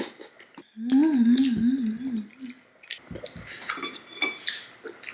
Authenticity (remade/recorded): recorded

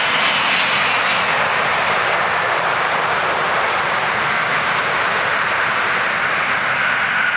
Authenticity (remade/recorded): recorded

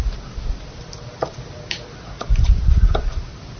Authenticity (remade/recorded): recorded